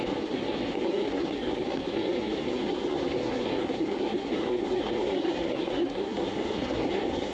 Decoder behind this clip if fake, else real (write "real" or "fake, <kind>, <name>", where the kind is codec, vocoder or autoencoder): fake, codec, SNAC